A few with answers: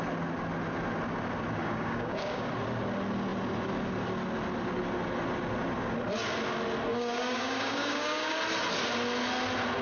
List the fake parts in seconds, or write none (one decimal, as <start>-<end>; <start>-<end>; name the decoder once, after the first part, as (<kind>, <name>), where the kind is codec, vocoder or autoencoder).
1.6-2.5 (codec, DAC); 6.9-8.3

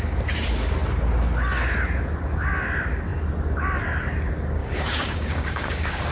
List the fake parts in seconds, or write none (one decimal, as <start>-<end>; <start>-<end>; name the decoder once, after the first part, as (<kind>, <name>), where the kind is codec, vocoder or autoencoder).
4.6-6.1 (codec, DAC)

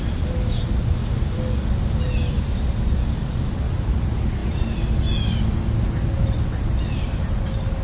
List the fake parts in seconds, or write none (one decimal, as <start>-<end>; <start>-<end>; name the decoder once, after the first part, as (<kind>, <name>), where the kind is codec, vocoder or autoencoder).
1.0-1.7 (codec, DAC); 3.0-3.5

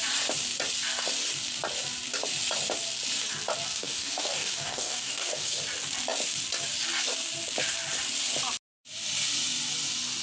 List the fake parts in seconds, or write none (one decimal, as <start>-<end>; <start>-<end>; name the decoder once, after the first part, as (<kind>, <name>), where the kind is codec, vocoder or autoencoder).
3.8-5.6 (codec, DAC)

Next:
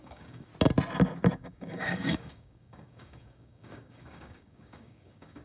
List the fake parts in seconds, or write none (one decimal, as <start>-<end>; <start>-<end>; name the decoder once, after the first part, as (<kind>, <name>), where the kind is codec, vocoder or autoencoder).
0.0-0.5 (codec, DAC); 1.3-5.4

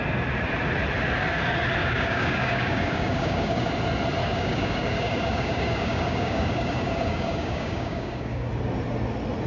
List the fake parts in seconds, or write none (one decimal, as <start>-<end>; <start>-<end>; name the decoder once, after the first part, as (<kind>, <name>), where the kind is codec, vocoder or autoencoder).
1.8-3.7 (codec, DAC); 4.2-8.5